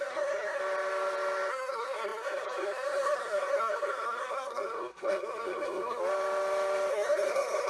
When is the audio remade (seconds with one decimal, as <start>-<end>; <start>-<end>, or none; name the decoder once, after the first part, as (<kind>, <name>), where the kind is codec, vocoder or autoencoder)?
0.0-0.6 (codec, SNAC); 1.5-6.0; 6.9-7.7

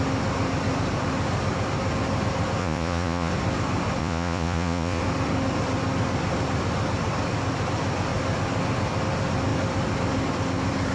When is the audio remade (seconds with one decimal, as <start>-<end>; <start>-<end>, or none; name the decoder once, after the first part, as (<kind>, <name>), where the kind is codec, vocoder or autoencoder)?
2.6-3.3 (vocoder, Vocos); 4.0-5.0

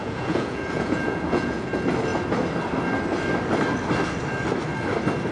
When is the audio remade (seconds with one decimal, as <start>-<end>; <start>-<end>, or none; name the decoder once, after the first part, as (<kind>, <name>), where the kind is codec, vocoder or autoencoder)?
0.0-1.7 (vocoder, Vocos)

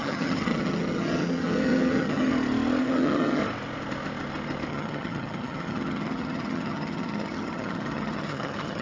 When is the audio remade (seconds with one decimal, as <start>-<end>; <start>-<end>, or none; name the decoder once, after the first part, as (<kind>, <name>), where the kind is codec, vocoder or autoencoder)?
0.0-2.3 (vocoder, HiFi-GAN); 2.8-3.4; 4.7-8.8

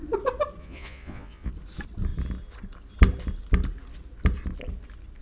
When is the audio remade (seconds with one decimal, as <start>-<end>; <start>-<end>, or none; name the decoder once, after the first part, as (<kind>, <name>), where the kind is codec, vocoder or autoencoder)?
0.6-1.5 (vocoder, Vocos)

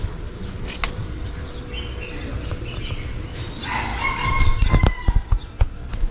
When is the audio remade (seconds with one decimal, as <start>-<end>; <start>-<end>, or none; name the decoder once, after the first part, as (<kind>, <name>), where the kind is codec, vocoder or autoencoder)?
none

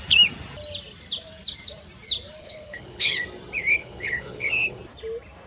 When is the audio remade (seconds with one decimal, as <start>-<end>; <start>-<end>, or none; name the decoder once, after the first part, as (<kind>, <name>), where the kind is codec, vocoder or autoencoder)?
2.4-3.2 (codec, HILCodec); 3.6-4.8